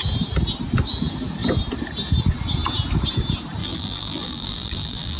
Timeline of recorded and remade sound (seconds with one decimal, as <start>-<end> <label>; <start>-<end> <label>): 0.0-3.6 recorded; 3.6-5.2 remade